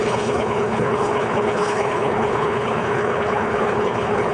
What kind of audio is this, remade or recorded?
remade